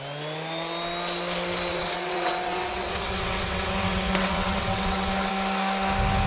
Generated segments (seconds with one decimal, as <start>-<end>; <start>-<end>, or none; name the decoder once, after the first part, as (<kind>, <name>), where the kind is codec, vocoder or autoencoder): 1.7-5.3 (vocoder, WaveNeXt)